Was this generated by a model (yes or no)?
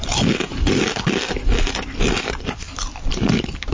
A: no